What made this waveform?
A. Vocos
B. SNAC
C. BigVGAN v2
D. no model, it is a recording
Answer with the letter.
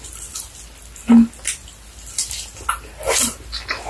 D